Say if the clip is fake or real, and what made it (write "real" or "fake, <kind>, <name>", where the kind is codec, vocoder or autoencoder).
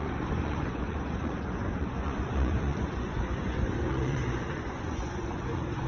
fake, vocoder, Vocos